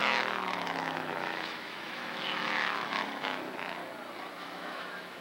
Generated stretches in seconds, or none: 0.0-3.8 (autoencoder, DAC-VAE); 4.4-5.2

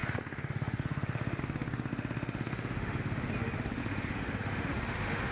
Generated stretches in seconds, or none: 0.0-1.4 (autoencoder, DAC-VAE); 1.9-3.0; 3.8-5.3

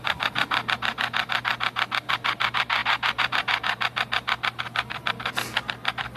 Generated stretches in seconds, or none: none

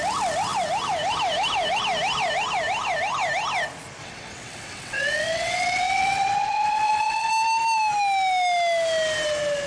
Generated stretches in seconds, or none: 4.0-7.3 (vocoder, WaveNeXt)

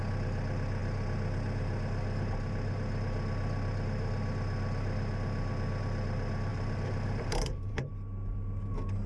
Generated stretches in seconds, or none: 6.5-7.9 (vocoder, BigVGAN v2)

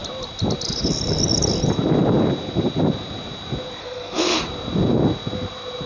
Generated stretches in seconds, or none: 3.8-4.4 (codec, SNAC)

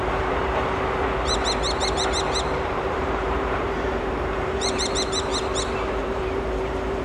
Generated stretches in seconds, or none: 0.0-0.4 (vocoder, BigVGAN v2); 2.7-5.3; 6.0-7.0